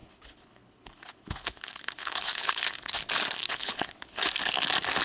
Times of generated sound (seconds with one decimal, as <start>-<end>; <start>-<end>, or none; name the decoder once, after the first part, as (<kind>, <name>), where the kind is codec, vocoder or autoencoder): 0.0-3.0 (codec, HILCodec); 3.4-4.2